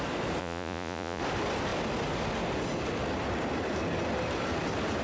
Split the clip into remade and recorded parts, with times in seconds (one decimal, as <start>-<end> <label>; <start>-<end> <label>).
0.0-0.4 recorded; 0.4-1.2 remade; 1.2-5.0 recorded